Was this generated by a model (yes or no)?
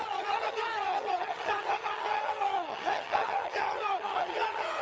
yes